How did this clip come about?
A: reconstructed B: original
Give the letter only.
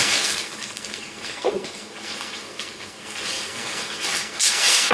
A